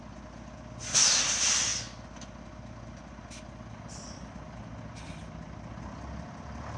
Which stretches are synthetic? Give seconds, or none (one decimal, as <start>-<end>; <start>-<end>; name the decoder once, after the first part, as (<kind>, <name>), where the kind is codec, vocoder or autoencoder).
none